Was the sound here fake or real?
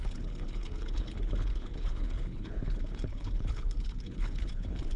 fake